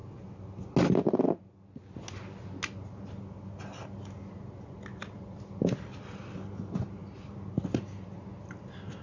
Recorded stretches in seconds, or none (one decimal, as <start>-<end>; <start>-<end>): 0.0-9.0